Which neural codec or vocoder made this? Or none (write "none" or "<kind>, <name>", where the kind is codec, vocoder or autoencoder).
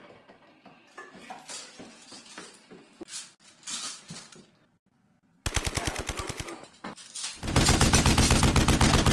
none